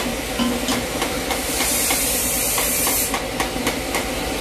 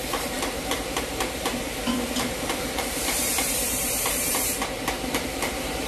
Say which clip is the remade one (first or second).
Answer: second